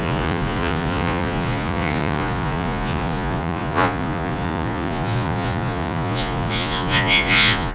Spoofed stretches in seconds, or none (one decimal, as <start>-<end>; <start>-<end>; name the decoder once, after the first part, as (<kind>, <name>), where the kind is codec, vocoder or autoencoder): 0.0-7.7 (vocoder, Vocos)